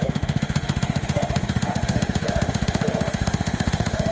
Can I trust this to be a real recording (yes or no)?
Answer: no